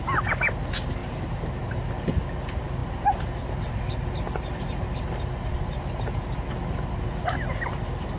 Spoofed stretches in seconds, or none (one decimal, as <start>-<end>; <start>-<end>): 1.0-1.7